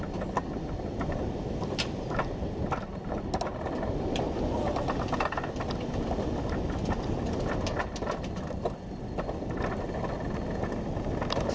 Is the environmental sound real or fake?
real